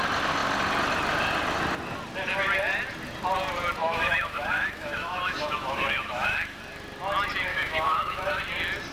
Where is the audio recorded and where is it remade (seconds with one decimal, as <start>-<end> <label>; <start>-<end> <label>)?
0.0-3.8 recorded; 3.8-6.6 remade; 6.6-7.5 recorded; 7.5-8.4 remade; 8.4-8.9 recorded